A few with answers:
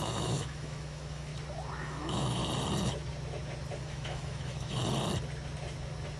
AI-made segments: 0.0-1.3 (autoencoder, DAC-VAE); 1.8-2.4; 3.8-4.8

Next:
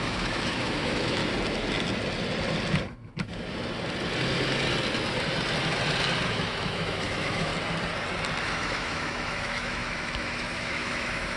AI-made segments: 0.0-1.2 (autoencoder, DAC-VAE); 6.3-7.5; 8.4-11.4

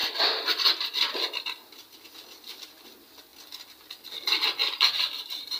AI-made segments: none

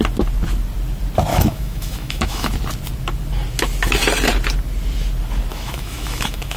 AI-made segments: 1.3-2.5 (autoencoder, DAC-VAE); 5.5-6.6

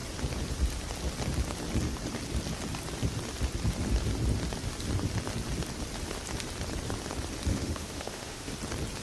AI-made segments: 7.5-8.5 (autoencoder, DAC-VAE)